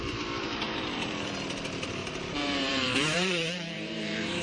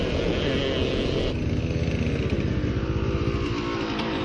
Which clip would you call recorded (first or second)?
second